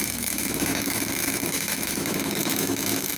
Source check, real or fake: fake